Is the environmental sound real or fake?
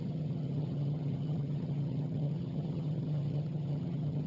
fake